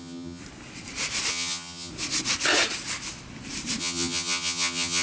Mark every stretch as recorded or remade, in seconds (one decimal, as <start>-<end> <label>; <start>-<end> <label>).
0.0-0.4 remade; 0.4-1.3 recorded; 1.3-1.9 remade; 1.9-3.8 recorded; 3.8-5.0 remade